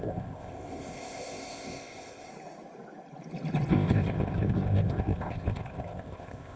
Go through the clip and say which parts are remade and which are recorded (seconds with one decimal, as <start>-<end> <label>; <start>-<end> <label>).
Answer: 0.0-2.3 remade; 2.3-3.7 recorded; 3.7-6.6 remade